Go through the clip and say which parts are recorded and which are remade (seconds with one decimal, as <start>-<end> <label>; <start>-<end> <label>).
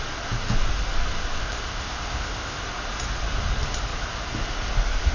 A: 0.0-1.4 recorded; 1.4-2.6 remade; 2.6-5.1 recorded